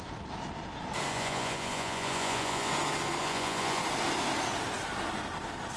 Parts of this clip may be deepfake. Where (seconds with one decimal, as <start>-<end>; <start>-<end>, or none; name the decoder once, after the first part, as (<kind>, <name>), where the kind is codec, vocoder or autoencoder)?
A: 1.1-2.7 (vocoder, Vocos); 3.2-3.8